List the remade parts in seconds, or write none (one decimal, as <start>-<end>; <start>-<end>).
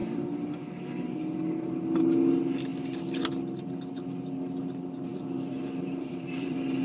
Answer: 5.1-6.8